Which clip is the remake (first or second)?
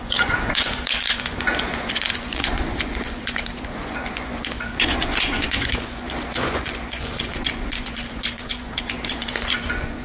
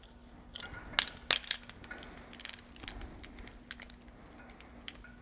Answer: first